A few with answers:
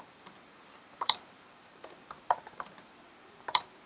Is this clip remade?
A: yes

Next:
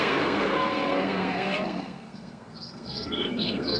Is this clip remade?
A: yes